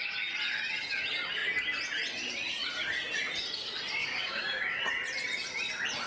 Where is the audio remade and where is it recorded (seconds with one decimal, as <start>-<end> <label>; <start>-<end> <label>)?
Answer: 0.0-4.0 recorded; 4.0-4.8 remade; 4.8-6.1 recorded